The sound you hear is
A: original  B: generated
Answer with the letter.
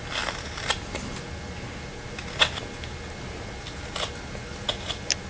A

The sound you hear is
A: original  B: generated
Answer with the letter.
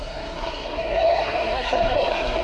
B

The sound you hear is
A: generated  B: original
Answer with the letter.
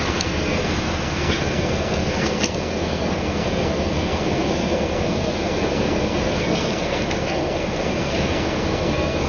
A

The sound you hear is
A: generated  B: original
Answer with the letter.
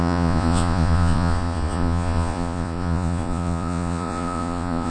A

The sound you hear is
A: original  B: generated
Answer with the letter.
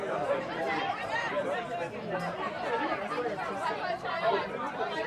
B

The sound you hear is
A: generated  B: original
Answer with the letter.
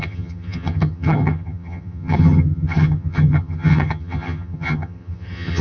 A